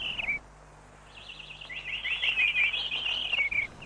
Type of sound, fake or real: real